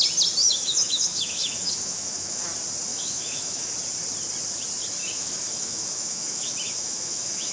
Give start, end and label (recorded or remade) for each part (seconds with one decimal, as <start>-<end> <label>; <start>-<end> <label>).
0.0-0.4 recorded; 0.4-2.4 remade; 2.4-2.9 recorded; 2.9-3.7 remade; 3.7-5.0 recorded; 5.0-7.5 remade